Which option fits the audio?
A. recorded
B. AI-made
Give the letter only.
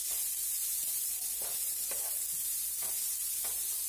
A